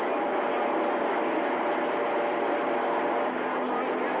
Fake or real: real